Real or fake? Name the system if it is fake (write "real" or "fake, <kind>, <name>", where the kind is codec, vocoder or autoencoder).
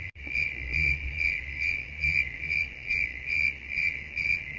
fake, vocoder, Vocos